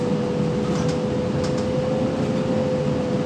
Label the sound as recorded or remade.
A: recorded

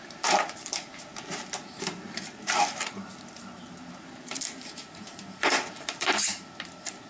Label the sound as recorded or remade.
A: remade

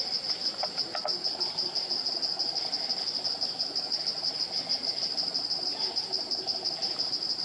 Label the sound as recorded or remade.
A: recorded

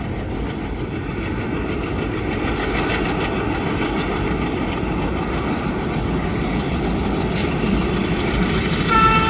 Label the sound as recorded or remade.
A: recorded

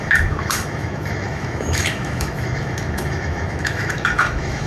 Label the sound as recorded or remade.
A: remade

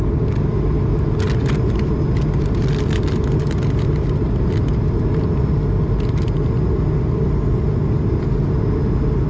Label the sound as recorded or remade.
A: recorded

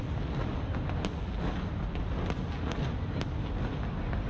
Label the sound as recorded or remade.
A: recorded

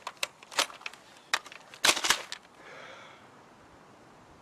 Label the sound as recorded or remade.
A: recorded